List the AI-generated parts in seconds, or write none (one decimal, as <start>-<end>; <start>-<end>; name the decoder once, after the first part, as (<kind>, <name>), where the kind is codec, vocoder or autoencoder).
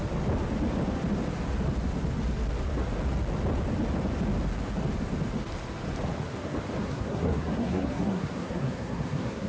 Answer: 6.8-9.5 (codec, SNAC)